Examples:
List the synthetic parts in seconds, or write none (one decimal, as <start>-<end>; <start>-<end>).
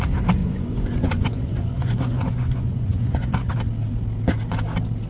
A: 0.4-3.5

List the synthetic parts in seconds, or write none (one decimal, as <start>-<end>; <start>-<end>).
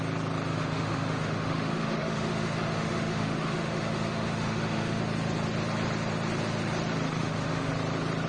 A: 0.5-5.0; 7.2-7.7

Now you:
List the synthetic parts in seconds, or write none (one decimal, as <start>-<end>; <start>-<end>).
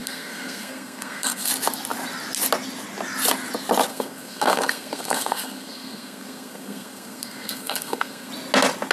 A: 0.0-1.5; 3.9-8.3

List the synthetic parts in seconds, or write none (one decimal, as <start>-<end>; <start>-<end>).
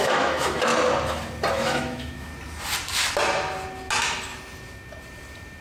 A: 0.0-0.7; 1.5-2.3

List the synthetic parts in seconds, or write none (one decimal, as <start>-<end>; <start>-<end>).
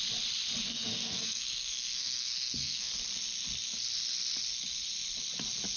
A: 0.6-2.9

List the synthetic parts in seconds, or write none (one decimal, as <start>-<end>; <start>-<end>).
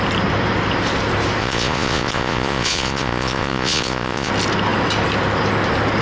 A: 1.4-4.3